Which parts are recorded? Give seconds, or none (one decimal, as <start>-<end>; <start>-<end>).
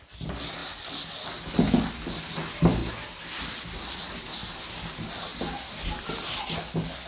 0.0-7.1